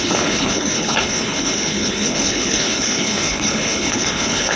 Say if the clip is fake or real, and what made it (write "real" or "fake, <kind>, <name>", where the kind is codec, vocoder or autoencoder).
fake, codec, HILCodec